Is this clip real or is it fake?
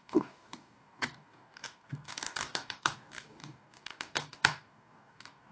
fake